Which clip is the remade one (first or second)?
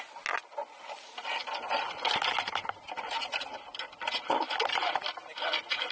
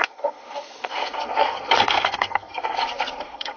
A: second